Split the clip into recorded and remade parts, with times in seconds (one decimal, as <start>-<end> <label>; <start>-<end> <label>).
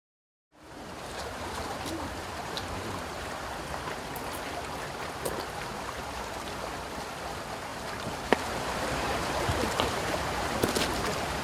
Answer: 0.0-0.4 recorded; 0.4-3.3 remade; 3.3-7.7 recorded; 7.7-10.2 remade; 10.2-11.4 recorded